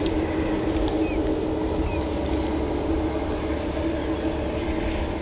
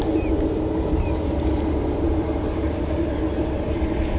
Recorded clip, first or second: first